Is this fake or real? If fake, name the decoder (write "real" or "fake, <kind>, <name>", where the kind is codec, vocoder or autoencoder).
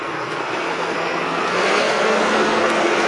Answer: fake, codec, SNAC